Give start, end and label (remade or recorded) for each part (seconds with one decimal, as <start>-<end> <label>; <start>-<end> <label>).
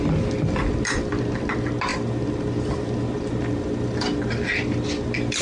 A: 0.0-1.9 recorded; 1.9-5.4 remade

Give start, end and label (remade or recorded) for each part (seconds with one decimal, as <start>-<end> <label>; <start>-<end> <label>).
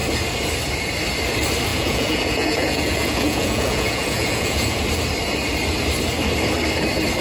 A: 0.0-1.7 recorded; 1.7-4.8 remade; 4.8-7.2 recorded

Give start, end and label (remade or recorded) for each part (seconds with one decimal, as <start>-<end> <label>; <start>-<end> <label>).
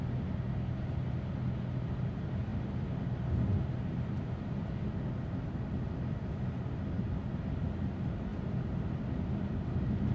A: 0.0-10.1 recorded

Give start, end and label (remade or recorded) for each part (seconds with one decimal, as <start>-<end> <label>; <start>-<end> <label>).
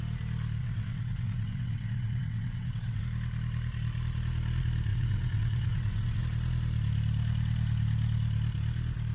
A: 0.0-0.6 recorded; 0.6-3.0 remade; 3.0-4.9 recorded; 4.9-6.2 remade; 6.2-9.1 recorded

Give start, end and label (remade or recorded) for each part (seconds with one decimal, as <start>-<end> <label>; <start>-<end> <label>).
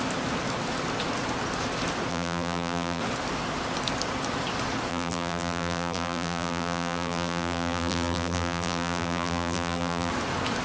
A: 0.0-2.1 recorded; 2.1-3.0 remade; 3.0-4.9 recorded; 4.9-10.1 remade; 10.1-10.6 recorded